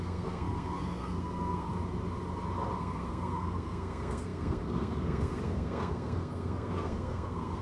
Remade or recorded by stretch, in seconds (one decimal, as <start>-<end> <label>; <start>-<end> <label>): 0.0-1.7 remade; 1.7-2.8 recorded; 2.8-7.6 remade